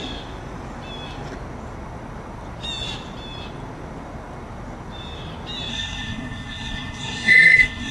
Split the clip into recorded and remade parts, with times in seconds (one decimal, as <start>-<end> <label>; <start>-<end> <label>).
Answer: 0.0-5.7 recorded; 5.7-7.9 remade